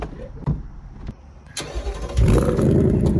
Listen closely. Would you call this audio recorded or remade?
recorded